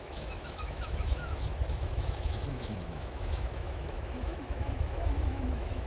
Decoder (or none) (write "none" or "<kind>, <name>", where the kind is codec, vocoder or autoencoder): autoencoder, DAC-VAE